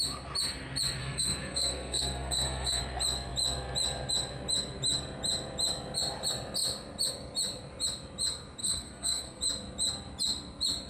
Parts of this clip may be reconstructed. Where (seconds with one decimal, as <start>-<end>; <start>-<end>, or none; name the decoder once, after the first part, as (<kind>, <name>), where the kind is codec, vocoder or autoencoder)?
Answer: 1.0-2.8 (codec, SNAC); 8.6-9.4